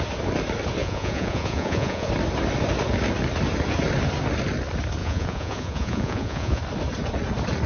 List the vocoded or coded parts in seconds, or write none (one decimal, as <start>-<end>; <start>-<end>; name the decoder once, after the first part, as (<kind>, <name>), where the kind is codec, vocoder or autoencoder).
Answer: 0.8-2.1 (vocoder, Vocos); 5.0-6.6